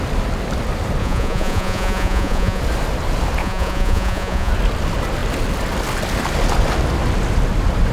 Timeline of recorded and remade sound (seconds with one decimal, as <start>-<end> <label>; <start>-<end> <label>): 0.0-1.0 recorded; 1.0-2.6 remade; 2.6-3.4 recorded; 3.4-4.5 remade; 4.5-7.9 recorded